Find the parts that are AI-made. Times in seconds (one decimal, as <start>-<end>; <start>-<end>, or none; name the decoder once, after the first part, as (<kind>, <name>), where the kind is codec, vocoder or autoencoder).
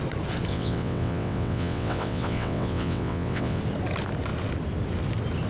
0.5-3.6 (vocoder, WaveNeXt)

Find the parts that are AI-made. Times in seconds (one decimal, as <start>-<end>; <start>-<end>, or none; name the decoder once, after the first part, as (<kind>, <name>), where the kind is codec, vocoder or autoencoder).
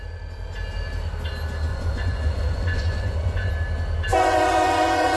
1.7-3.5 (vocoder, Vocos); 4.1-5.2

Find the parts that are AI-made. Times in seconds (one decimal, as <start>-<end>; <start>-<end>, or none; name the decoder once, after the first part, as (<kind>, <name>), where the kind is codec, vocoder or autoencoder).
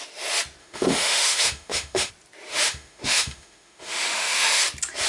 0.6-2.1 (autoencoder, DAC-VAE); 2.5-4.6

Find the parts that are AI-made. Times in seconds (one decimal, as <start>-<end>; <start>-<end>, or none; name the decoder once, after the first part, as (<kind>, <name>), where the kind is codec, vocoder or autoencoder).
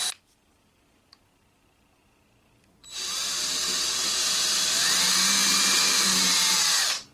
0.0-7.1 (vocoder, BigVGAN v2)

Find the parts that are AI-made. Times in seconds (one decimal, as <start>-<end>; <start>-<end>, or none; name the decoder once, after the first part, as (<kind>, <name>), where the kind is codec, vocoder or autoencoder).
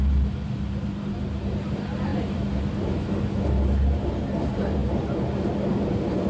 none